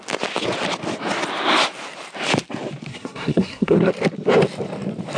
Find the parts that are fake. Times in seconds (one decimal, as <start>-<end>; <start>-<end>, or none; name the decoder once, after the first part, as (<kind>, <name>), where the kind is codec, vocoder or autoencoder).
2.9-3.9 (codec, SNAC)